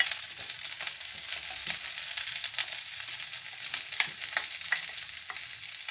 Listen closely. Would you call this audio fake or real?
real